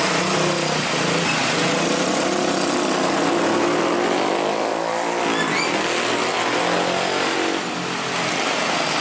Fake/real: real